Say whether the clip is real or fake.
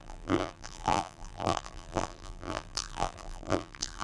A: fake